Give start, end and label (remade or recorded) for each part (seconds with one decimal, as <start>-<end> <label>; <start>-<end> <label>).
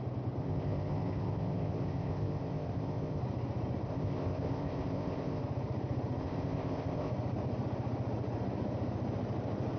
0.0-0.4 recorded; 0.4-3.2 remade; 3.2-3.9 recorded; 3.9-5.4 remade; 5.4-6.2 recorded; 6.2-7.1 remade; 7.1-9.8 recorded